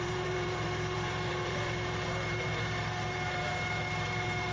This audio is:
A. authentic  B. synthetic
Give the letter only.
B